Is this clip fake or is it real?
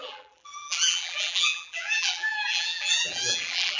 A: fake